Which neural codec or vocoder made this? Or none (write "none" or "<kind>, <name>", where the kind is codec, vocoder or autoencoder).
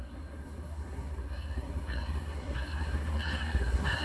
codec, SNAC